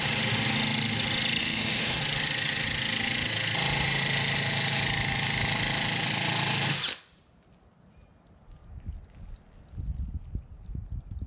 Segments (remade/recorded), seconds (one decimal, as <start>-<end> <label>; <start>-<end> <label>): 0.0-1.4 recorded; 1.4-2.0 remade; 2.0-11.3 recorded